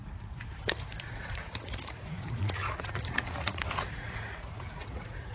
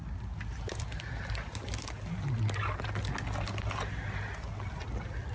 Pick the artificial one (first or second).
first